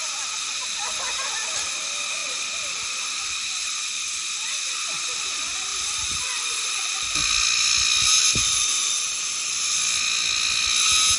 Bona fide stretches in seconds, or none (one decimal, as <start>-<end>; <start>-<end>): 0.0-2.2; 4.1-5.7; 9.0-11.2